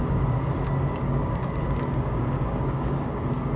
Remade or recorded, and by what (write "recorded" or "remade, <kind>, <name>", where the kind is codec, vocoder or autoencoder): remade, codec, DAC